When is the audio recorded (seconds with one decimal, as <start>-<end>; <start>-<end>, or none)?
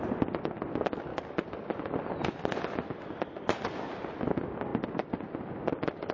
0.0-6.1